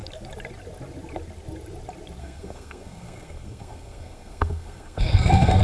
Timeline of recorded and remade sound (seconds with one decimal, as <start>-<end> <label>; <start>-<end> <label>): 0.0-2.2 recorded; 2.2-5.6 remade